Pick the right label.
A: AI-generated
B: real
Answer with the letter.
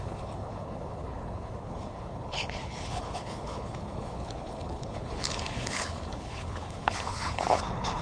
A